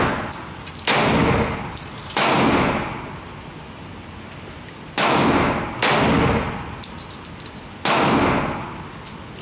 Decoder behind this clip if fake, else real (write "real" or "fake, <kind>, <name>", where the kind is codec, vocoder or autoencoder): real